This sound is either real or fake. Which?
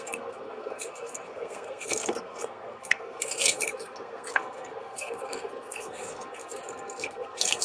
fake